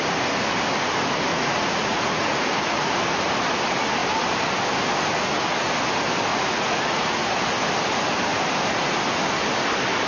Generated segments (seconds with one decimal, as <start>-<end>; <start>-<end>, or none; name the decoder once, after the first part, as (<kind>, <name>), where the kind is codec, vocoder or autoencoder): 1.3-3.0 (vocoder, Vocos); 6.3-7.4